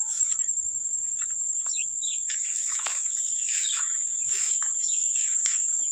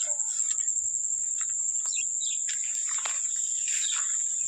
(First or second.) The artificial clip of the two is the first